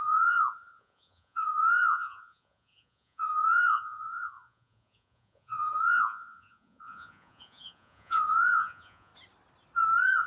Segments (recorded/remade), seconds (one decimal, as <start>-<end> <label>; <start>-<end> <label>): 0.0-9.1 remade; 9.1-10.3 recorded

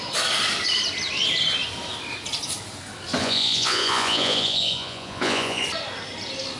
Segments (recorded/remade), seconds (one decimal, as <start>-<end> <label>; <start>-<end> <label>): 0.0-3.2 recorded; 3.2-5.6 remade; 5.6-6.6 recorded